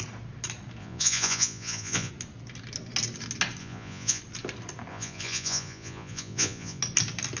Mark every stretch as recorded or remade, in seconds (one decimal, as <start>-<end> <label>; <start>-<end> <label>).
0.0-0.8 recorded; 0.8-2.1 remade; 2.1-3.6 recorded; 3.6-4.2 remade; 4.2-4.9 recorded; 4.9-6.8 remade; 6.8-7.4 recorded